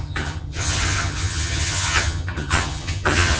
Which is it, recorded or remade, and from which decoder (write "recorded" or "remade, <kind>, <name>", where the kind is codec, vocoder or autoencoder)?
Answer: remade, vocoder, HiFi-GAN